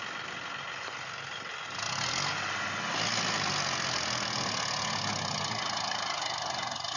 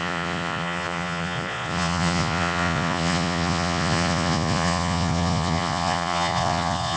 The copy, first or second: second